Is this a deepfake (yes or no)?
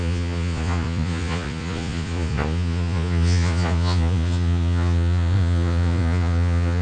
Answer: yes